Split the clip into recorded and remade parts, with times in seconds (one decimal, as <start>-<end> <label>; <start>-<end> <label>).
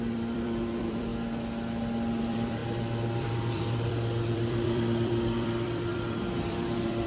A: 0.0-1.1 remade; 1.1-2.2 recorded; 2.2-2.6 remade; 2.6-3.2 recorded; 3.2-7.1 remade